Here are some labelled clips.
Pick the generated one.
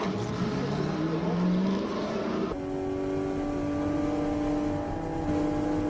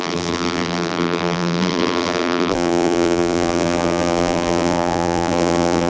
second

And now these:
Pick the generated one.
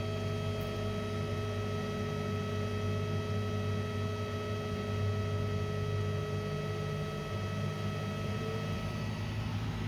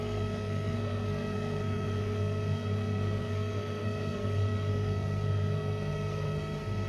second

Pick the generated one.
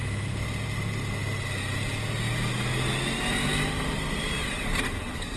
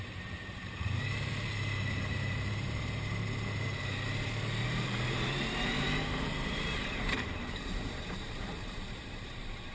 second